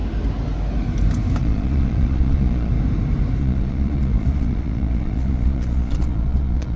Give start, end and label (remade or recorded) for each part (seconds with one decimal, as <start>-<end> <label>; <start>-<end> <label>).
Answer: 0.0-1.4 recorded; 1.4-2.7 remade; 2.7-3.4 recorded; 3.4-6.8 remade